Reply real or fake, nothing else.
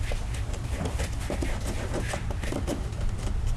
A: real